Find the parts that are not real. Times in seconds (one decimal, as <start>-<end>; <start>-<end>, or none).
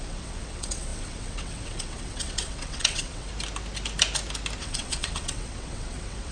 0.0-3.3; 4.6-6.3